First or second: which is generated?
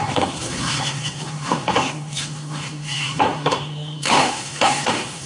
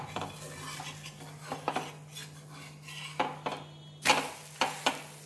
first